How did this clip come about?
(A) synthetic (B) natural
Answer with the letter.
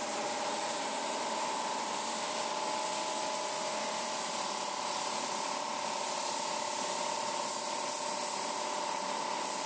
B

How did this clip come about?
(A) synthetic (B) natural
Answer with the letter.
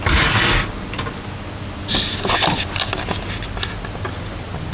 B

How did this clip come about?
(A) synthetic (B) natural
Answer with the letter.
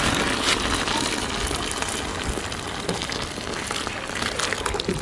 B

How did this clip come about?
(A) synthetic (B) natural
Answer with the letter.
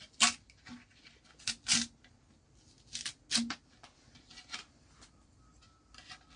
B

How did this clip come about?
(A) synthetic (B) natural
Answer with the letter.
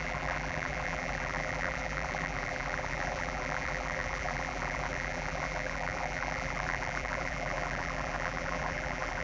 A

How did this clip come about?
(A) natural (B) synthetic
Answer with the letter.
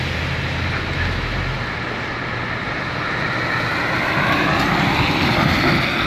A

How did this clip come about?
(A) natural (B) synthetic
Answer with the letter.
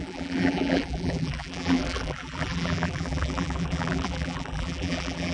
B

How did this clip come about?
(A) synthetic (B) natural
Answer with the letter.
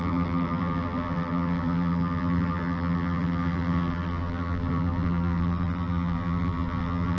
A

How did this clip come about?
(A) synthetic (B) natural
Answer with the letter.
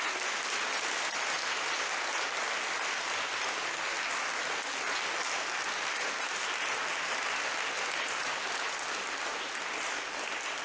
B